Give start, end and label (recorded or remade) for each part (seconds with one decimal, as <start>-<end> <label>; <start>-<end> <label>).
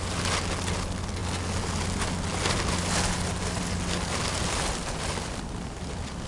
0.0-6.3 recorded